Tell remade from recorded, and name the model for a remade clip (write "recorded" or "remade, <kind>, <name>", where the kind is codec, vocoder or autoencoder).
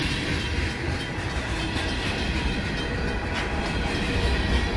recorded